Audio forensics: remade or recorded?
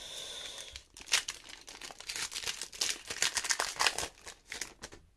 recorded